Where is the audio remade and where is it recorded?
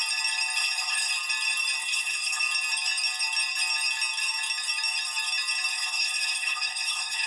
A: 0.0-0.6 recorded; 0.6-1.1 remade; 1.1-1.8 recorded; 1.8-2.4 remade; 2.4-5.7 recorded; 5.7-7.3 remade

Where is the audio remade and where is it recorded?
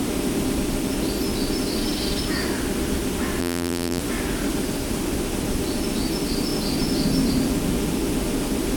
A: 0.0-3.4 recorded; 3.4-4.0 remade; 4.0-8.8 recorded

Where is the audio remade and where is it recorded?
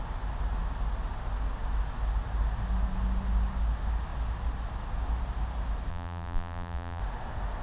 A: 0.0-5.9 recorded; 5.9-7.0 remade; 7.0-7.6 recorded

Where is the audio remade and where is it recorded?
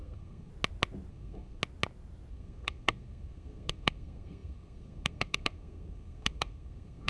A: 0.0-0.5 remade; 0.5-1.1 recorded; 1.1-1.6 remade; 1.6-2.3 recorded; 2.3-7.1 remade